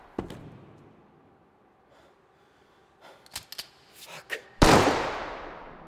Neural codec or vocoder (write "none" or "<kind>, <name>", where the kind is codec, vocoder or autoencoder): none